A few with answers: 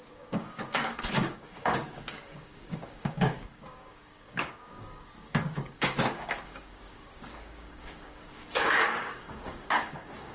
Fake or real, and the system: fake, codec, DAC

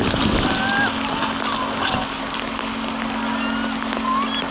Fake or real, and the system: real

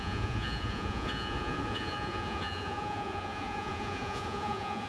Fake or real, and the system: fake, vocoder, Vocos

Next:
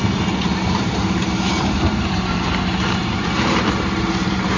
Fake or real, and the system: fake, vocoder, BigVGAN v2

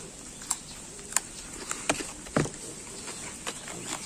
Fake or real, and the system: real